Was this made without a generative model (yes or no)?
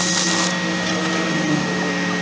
yes